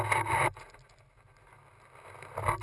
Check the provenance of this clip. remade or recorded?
recorded